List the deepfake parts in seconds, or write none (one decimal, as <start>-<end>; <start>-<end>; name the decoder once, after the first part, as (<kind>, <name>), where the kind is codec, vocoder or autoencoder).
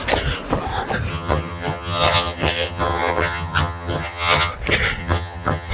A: 1.1-4.5 (vocoder, HiFi-GAN); 5.0-5.7